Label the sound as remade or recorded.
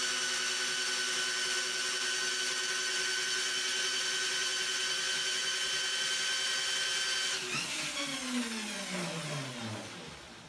recorded